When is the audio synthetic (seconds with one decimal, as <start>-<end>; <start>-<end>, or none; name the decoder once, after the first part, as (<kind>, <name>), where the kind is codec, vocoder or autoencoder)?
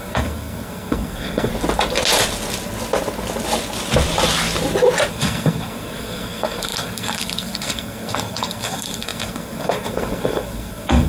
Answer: 0.0-1.5 (codec, SNAC); 5.1-11.1